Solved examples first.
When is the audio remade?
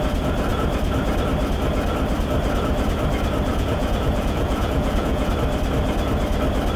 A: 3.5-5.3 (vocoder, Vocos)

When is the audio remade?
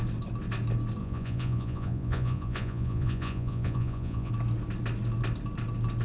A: 1.0-4.3 (vocoder, Vocos)